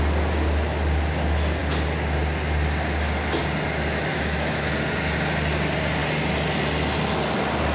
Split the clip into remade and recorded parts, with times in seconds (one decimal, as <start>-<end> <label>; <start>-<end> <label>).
0.0-4.1 recorded; 4.1-4.7 remade; 4.7-7.7 recorded